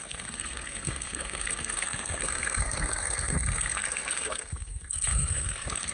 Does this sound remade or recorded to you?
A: remade